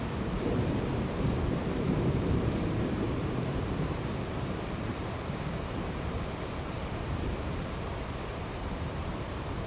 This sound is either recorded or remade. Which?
remade